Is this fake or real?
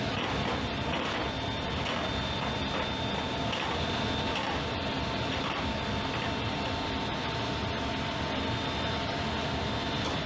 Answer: real